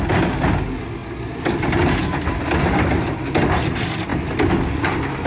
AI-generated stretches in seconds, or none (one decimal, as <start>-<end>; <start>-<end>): none